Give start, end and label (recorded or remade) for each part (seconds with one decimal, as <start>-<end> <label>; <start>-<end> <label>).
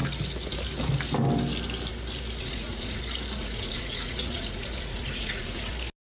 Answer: 0.0-2.4 recorded; 2.4-3.0 remade; 3.0-3.4 recorded; 3.4-5.7 remade; 5.7-6.2 recorded